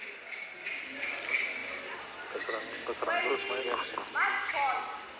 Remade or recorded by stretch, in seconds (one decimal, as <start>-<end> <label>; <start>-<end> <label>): 0.0-5.2 recorded

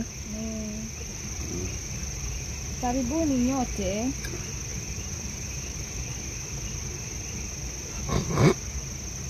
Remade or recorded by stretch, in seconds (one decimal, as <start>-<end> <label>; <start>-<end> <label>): 0.0-1.1 recorded; 1.1-2.7 remade; 2.7-4.7 recorded; 4.7-6.0 remade; 6.0-9.3 recorded

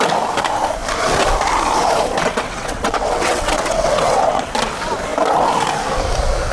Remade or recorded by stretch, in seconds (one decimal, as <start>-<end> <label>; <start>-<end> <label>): 0.0-2.2 recorded; 2.2-4.5 remade; 4.5-6.5 recorded

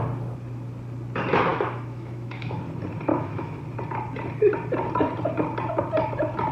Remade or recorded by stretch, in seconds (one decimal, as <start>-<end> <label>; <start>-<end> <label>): 0.0-1.5 recorded; 1.5-2.6 remade; 2.6-3.1 recorded; 3.1-3.6 remade; 3.6-6.5 recorded

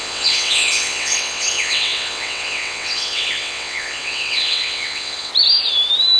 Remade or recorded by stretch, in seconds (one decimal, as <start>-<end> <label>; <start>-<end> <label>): 0.0-5.3 remade; 5.3-6.2 recorded

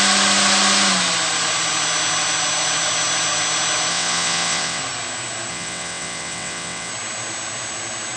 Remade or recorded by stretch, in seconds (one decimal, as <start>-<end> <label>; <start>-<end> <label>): 0.0-3.9 recorded; 3.9-4.8 remade; 4.8-5.5 recorded; 5.5-6.9 remade; 6.9-8.2 recorded